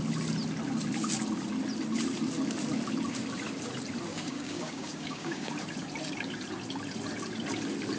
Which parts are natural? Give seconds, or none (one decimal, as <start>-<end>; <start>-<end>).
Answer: 0.0-4.1; 5.5-8.0